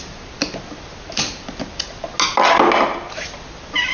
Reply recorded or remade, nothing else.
recorded